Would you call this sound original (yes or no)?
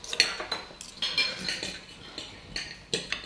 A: yes